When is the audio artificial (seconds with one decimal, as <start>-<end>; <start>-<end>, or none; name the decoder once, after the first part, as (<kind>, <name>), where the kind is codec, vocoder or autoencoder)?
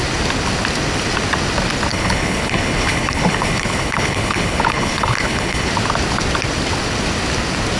1.9-5.7 (codec, HILCodec)